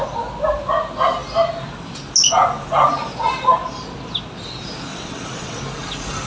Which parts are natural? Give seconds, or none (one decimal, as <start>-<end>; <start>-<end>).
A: 0.0-4.9; 5.6-6.3